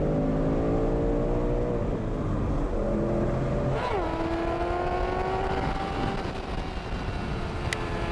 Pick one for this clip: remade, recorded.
recorded